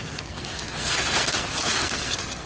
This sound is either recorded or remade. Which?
remade